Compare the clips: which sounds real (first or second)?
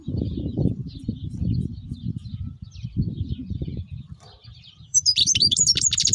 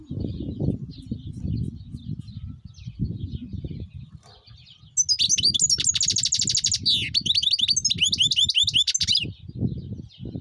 second